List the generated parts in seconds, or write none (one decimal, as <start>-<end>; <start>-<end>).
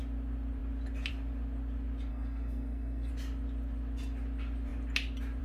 2.1-3.1